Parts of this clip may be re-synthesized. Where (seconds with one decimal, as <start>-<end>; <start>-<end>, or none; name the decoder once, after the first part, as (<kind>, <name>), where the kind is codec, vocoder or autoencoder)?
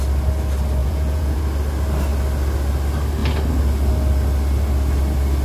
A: 0.8-1.4 (vocoder, Vocos)